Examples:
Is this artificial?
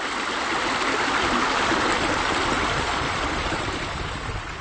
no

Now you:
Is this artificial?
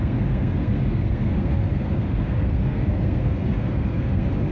yes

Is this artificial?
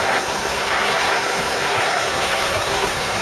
yes